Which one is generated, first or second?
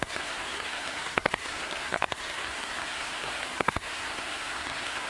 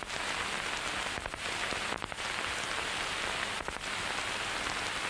first